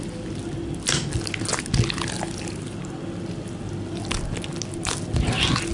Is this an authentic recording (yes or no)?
yes